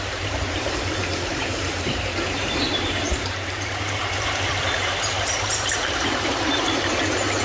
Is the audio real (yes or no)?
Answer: no